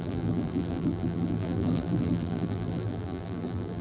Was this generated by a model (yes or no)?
yes